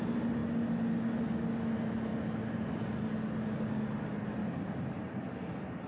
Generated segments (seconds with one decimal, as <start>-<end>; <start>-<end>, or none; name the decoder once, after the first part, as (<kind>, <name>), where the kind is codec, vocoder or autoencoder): 4.4-5.1 (vocoder, BigVGAN v2)